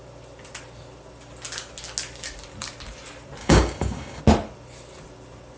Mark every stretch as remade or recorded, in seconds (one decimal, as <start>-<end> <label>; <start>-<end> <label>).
0.0-3.4 recorded; 3.4-4.2 remade; 4.2-5.6 recorded